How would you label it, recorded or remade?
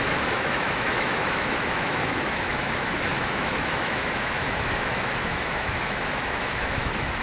remade